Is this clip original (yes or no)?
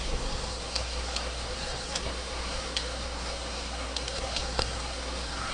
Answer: no